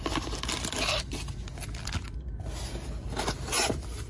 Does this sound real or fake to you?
real